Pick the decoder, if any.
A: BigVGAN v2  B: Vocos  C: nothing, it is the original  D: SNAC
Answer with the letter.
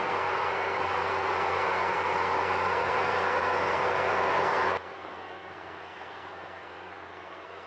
D